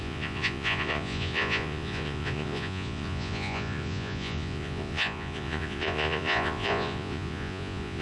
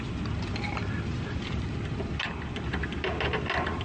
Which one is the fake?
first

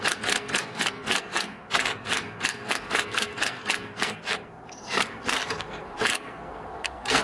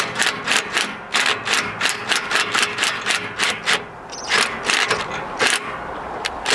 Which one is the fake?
first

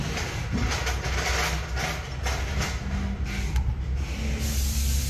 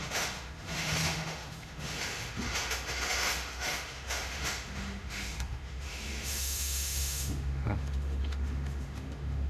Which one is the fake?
second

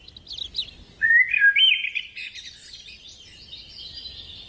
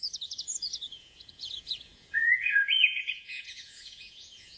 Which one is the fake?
second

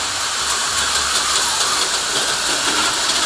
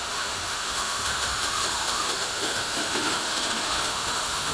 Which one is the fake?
second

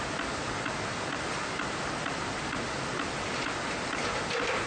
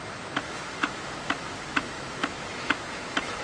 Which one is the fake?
second